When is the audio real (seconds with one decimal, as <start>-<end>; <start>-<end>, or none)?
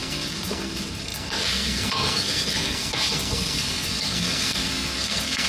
none